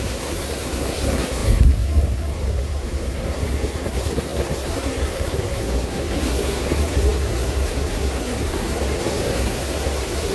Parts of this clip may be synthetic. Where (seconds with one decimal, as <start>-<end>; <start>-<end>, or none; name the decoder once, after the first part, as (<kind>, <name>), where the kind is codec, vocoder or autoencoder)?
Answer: 0.0-10.3 (codec, SNAC)